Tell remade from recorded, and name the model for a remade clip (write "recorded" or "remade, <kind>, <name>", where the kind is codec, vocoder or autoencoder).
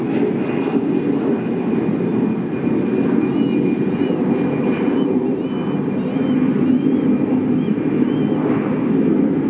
recorded